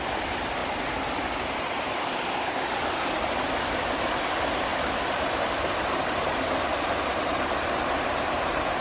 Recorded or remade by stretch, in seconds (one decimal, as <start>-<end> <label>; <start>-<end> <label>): 0.0-0.6 recorded; 0.6-4.1 remade; 4.1-4.7 recorded; 4.7-6.9 remade; 6.9-8.8 recorded